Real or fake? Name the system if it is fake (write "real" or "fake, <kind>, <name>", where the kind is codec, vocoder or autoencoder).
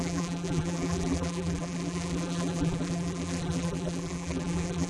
fake, vocoder, BigVGAN v2